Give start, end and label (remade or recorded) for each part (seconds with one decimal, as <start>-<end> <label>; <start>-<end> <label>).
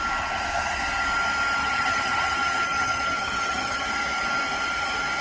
0.0-1.6 recorded; 1.6-3.8 remade; 3.8-5.2 recorded